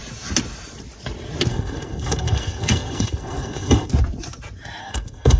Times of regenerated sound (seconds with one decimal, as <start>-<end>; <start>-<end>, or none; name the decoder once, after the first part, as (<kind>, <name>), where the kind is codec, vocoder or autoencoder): 1.5-3.9 (codec, SNAC); 4.8-5.4

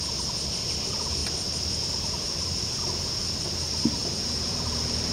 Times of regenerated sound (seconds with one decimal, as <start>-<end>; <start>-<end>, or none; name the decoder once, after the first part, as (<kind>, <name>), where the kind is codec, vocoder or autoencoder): 1.2-2.8 (vocoder, BigVGAN v2); 4.0-5.1

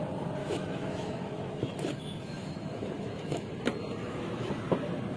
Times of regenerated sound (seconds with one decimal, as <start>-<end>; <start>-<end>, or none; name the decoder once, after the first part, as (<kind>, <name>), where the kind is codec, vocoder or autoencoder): 0.4-3.5 (autoencoder, DAC-VAE); 4.0-4.5

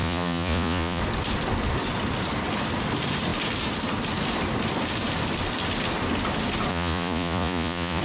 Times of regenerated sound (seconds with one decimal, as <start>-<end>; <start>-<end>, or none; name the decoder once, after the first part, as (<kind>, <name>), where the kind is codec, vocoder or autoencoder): 0.0-1.0 (vocoder, Vocos); 6.7-8.0

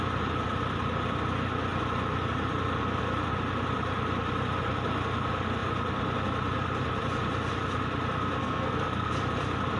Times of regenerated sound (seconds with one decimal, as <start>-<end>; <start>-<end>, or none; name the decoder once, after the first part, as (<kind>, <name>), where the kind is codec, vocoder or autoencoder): 8.4-9.1 (codec, SNAC)

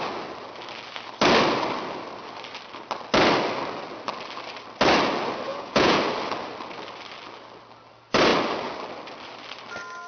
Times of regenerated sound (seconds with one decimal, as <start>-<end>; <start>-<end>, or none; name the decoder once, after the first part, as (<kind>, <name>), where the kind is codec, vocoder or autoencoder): 5.5-6.0 (vocoder, Vocos)

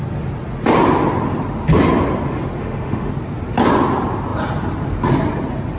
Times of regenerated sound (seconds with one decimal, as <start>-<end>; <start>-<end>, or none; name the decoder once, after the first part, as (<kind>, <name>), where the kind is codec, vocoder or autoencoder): 2.6-3.1 (autoencoder, DAC-VAE)

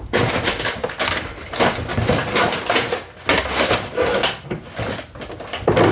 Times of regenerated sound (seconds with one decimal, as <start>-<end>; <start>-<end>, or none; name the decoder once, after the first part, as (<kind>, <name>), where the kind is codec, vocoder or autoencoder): none